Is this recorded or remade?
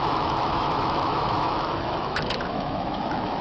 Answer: remade